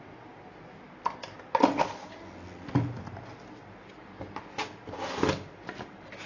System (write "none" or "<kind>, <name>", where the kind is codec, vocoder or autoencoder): none